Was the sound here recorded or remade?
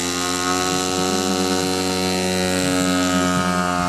recorded